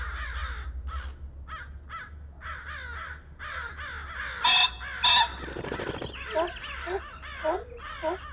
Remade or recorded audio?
recorded